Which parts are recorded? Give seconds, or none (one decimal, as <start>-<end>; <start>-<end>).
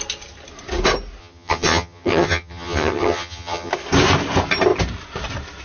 0.0-1.2; 3.7-5.6